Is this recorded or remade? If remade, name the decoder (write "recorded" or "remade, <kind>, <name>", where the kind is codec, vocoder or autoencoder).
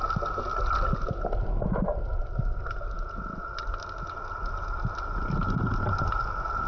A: recorded